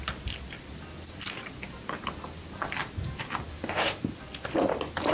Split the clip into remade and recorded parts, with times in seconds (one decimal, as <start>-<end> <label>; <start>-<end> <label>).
0.0-3.5 recorded; 3.5-4.0 remade; 4.0-5.1 recorded